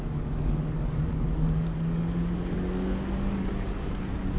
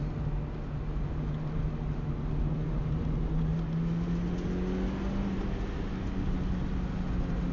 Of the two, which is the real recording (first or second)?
second